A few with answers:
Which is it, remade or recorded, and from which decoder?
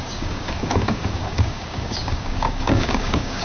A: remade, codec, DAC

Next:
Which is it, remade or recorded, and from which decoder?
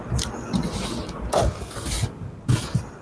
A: recorded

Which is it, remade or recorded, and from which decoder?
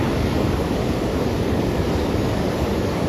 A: remade, codec, DAC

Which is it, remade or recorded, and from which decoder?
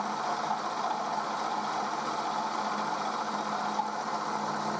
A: recorded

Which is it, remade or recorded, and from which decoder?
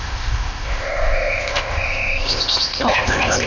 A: remade, codec, ZipCodec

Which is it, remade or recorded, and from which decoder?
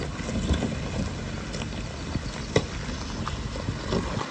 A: recorded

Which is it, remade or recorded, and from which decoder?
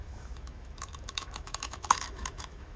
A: remade, autoencoder, DAC-VAE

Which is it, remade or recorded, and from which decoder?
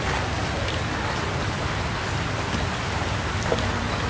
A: recorded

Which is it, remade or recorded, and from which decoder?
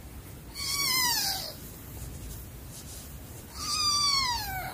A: recorded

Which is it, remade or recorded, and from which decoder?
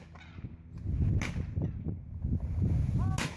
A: recorded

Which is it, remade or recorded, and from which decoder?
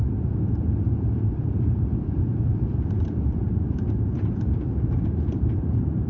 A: remade, vocoder, BigVGAN v2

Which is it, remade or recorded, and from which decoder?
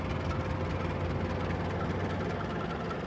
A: recorded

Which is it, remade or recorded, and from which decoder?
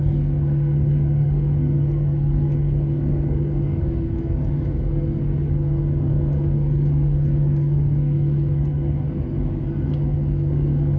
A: remade, codec, SNAC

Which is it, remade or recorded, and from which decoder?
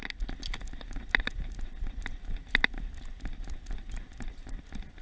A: recorded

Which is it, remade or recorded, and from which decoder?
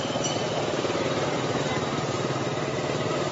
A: remade, vocoder, BigVGAN v2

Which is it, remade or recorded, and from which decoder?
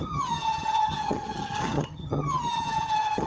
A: remade, vocoder, HiFi-GAN